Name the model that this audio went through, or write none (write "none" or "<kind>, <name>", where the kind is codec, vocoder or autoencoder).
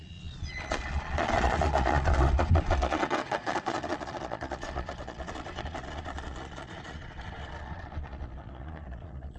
vocoder, Vocos